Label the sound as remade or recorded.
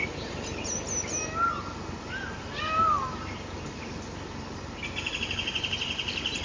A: recorded